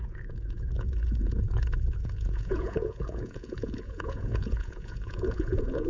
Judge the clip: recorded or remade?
remade